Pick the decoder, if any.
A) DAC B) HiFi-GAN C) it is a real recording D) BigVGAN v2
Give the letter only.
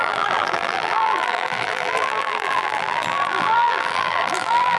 D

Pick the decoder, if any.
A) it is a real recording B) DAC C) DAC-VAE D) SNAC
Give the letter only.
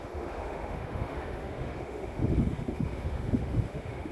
C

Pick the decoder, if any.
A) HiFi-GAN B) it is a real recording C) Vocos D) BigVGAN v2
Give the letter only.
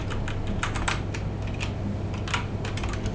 B